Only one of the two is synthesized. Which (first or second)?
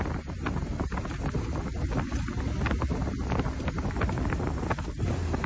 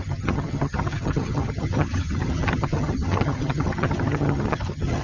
second